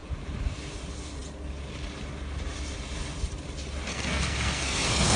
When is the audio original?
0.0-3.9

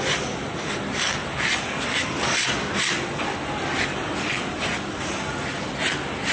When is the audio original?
0.0-6.3

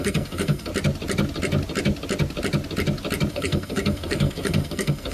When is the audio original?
0.7-3.3

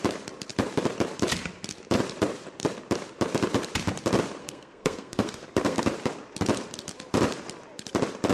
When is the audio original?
0.0-4.4; 5.8-8.3

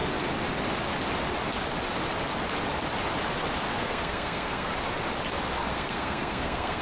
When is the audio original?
0.0-3.7; 4.7-5.7